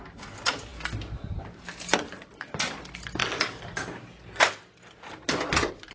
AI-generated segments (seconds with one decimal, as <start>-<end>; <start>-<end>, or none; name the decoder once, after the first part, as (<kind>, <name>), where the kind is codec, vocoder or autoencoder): none